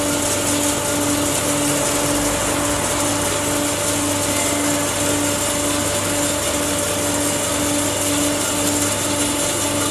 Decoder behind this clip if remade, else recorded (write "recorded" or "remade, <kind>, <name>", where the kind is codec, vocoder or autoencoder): recorded